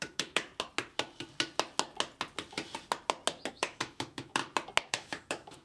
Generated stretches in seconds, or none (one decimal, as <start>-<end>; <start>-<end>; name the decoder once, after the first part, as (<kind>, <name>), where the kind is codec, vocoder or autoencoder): 0.0-0.5 (autoencoder, DAC-VAE); 3.5-4.4; 4.9-5.6